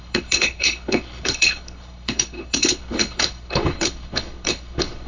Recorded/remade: remade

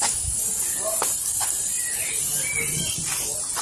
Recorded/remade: recorded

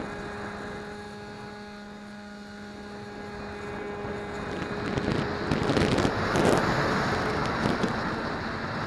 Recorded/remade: recorded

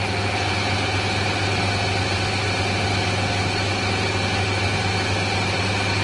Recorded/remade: recorded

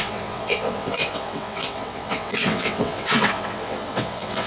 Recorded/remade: remade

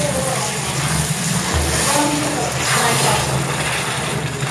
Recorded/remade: recorded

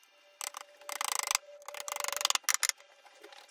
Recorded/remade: recorded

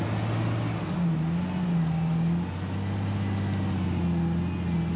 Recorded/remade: recorded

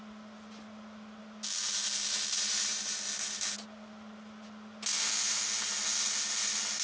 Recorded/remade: recorded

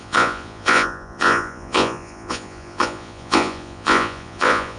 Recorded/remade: remade